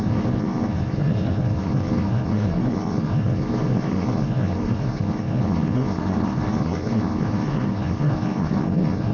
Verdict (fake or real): fake